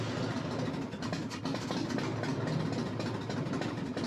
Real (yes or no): yes